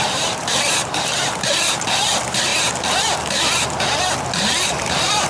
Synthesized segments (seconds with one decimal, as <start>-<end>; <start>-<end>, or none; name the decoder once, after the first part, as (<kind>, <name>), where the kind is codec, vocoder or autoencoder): 0.0-2.5 (vocoder, BigVGAN v2); 4.5-5.3